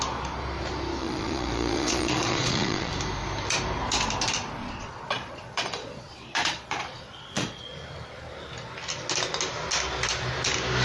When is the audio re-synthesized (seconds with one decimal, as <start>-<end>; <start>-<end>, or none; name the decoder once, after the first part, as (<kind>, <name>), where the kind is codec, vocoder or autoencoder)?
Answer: 1.0-2.9 (vocoder, Vocos); 4.6-7.6